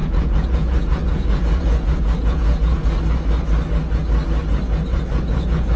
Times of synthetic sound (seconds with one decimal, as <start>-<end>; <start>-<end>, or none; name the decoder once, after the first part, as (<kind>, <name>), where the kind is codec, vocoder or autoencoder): 0.0-3.0 (vocoder, Vocos); 4.9-5.8